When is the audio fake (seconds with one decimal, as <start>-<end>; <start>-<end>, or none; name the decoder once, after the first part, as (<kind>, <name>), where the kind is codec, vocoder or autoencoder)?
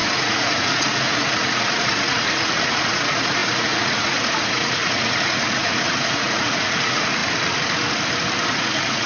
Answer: 0.0-7.2 (vocoder, Vocos); 8.5-9.1